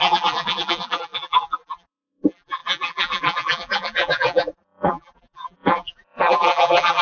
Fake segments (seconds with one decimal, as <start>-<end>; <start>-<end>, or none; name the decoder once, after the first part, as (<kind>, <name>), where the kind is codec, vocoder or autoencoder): 0.0-7.0 (vocoder, BigVGAN v2)